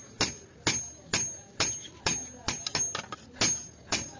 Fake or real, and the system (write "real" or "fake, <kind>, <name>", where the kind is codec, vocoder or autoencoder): real